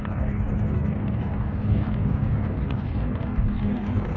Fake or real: fake